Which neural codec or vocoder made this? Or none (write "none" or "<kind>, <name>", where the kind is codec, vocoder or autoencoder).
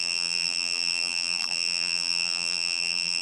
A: vocoder, BigVGAN v2